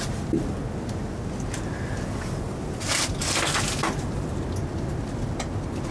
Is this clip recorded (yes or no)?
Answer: yes